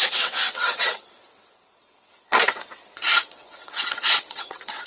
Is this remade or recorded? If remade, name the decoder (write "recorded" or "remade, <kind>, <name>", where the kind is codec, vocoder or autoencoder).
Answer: remade, vocoder, WaveNeXt